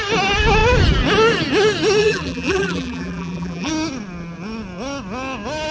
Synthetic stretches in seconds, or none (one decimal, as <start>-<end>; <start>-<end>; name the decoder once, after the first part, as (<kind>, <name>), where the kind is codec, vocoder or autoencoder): 2.0-3.7 (vocoder, BigVGAN v2)